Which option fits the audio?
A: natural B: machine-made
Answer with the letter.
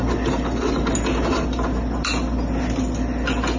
A